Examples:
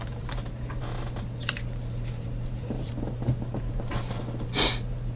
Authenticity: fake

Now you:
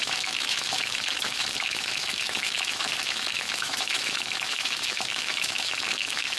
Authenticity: fake